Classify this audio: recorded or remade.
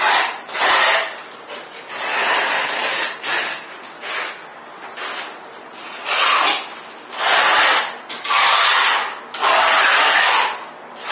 recorded